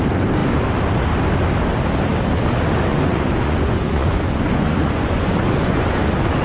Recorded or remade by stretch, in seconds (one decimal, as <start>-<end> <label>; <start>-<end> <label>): 0.0-2.9 recorded; 2.9-6.0 remade; 6.0-6.4 recorded